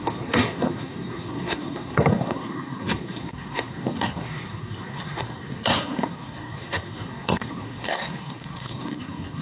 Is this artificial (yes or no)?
yes